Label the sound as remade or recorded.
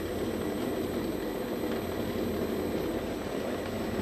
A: recorded